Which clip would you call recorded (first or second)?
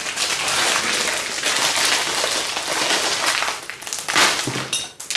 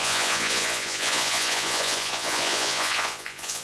first